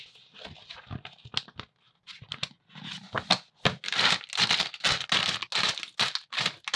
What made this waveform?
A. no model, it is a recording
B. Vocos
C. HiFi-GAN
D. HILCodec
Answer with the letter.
A